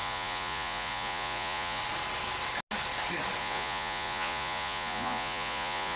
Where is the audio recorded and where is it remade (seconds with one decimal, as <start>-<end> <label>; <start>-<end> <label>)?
0.0-1.8 remade; 1.8-3.4 recorded; 3.4-6.0 remade